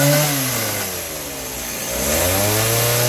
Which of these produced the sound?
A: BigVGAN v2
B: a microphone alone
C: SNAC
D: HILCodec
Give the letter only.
B